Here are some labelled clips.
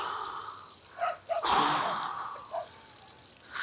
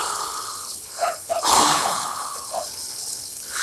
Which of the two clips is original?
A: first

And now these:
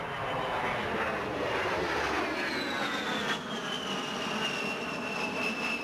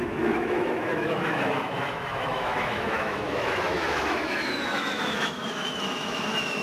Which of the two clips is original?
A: first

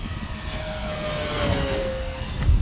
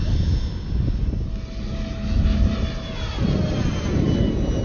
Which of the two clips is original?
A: second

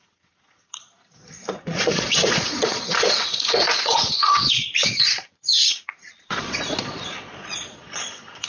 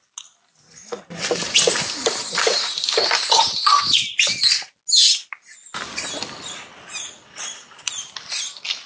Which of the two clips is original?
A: second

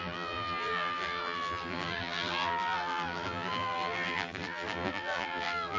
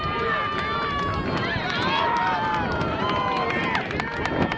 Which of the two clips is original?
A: second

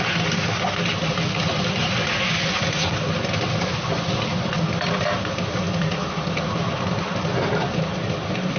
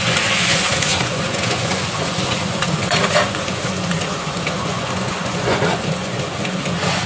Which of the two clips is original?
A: first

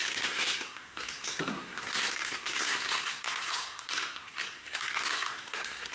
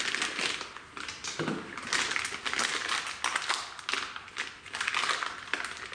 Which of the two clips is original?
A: second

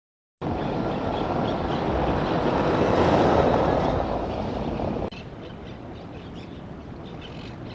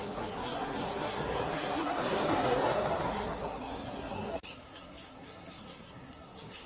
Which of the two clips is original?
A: first